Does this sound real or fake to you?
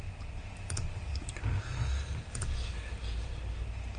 real